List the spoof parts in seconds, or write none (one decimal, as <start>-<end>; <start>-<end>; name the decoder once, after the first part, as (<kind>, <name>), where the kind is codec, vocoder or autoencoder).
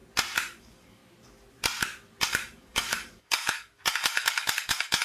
0.6-1.0 (codec, DAC); 2.3-5.0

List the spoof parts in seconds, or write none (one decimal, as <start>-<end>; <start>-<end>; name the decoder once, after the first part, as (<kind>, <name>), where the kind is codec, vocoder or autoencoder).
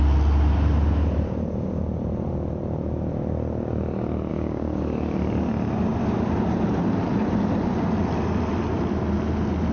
4.3-4.8 (codec, DAC)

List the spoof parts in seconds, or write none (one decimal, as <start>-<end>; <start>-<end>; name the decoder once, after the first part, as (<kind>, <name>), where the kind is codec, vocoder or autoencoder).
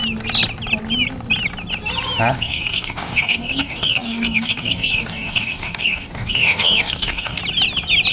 2.3-7.4 (codec, DAC)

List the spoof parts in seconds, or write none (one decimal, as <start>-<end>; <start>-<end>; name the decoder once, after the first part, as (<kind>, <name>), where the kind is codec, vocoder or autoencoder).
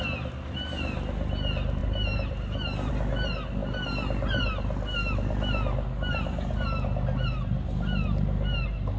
none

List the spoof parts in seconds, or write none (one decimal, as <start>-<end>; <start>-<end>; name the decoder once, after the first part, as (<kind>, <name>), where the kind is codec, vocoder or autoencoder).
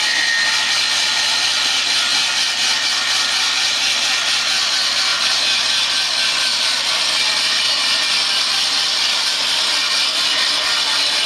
none